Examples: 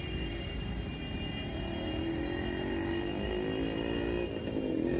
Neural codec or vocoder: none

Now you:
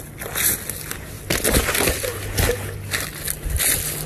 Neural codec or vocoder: none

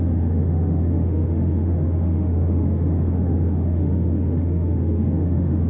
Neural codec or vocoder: autoencoder, DAC-VAE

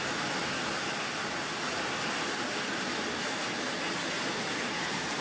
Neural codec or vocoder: none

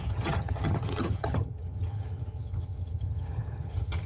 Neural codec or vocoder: vocoder, HiFi-GAN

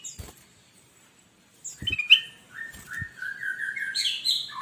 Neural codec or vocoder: none